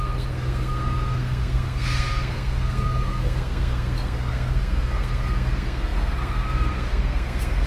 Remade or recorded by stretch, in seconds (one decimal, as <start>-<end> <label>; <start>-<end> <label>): 0.0-7.7 remade